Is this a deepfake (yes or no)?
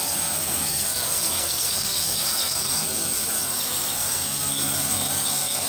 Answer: yes